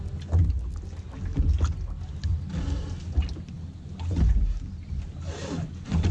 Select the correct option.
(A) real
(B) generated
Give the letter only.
A